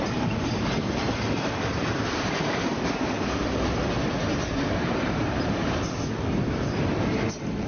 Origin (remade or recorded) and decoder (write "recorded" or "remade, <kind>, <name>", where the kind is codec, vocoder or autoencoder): remade, vocoder, BigVGAN v2